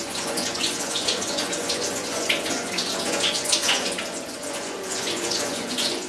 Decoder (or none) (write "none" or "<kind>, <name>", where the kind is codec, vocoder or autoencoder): vocoder, Vocos